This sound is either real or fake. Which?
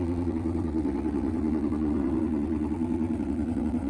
fake